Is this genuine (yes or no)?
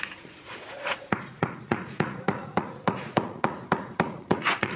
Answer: no